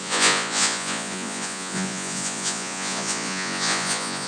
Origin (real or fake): fake